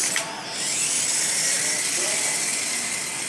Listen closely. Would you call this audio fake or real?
real